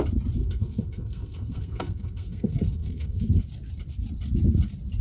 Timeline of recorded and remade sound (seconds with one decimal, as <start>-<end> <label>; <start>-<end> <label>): 0.0-0.4 recorded; 0.4-3.4 remade; 3.4-5.0 recorded